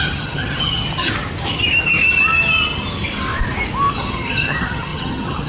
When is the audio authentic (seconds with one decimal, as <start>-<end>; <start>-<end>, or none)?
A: 1.1-3.9

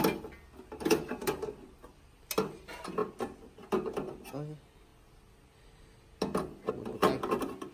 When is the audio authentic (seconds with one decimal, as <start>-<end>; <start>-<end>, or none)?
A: 0.0-7.7

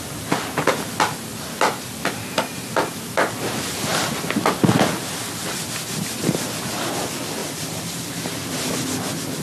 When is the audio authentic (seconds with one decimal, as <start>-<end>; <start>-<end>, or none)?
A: 0.0-7.4; 8.7-9.4

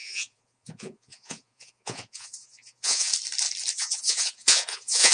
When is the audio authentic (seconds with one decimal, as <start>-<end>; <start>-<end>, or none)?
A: 3.1-3.7

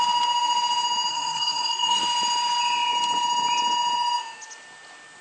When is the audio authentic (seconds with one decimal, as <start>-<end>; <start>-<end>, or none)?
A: 0.0-1.1; 2.0-5.2